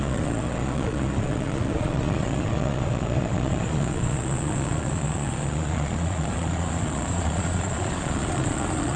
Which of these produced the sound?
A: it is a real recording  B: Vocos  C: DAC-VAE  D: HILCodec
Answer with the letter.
B